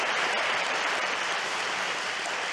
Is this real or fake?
fake